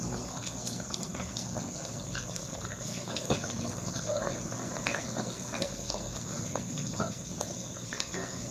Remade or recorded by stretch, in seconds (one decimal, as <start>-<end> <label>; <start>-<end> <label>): 0.0-8.5 remade